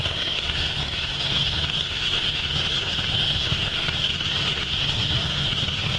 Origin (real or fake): fake